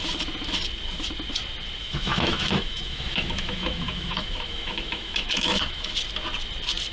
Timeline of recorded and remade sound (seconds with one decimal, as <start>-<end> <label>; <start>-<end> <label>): 0.0-1.8 recorded; 1.8-5.9 remade; 5.9-6.9 recorded